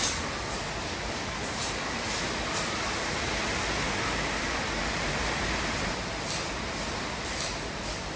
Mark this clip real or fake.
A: real